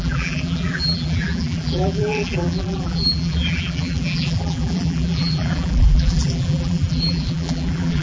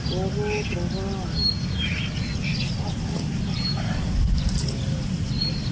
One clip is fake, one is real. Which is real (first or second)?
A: second